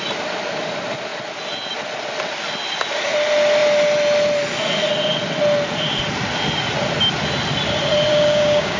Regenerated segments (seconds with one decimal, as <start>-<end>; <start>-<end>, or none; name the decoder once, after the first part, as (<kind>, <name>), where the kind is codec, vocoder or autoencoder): 8.1-8.8 (codec, DAC)